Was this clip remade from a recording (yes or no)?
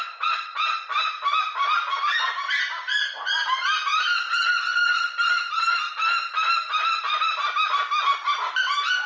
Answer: no